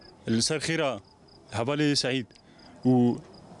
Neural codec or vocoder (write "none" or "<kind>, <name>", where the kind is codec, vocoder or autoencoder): none